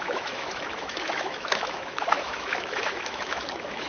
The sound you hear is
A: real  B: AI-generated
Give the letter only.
B